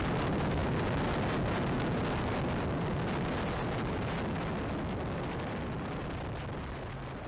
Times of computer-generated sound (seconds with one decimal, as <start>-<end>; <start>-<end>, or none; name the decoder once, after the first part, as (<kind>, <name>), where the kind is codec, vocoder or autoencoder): none